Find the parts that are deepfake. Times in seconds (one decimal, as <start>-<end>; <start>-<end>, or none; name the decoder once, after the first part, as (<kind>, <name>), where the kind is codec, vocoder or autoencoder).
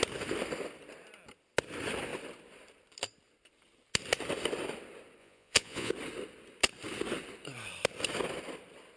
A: 5.2-5.9 (vocoder, Vocos)